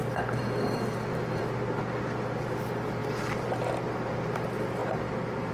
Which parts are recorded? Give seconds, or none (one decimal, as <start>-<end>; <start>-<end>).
0.0-1.1; 1.8-4.8